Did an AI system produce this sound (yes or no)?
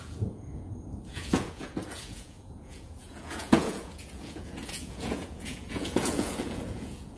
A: yes